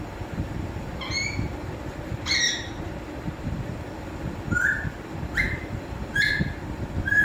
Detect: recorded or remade recorded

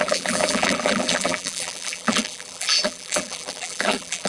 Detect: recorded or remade remade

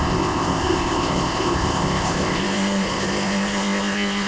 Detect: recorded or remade remade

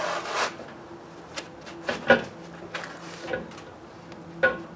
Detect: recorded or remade recorded